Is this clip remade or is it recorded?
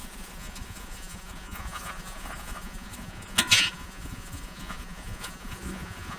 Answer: remade